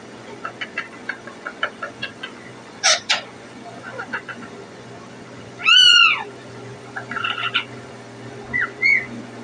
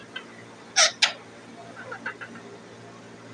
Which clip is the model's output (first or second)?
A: first